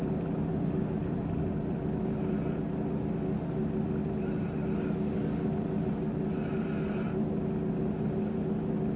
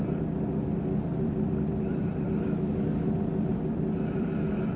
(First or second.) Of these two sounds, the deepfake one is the second